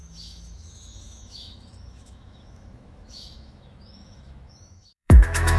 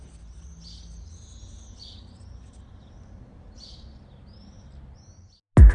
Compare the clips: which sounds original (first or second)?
second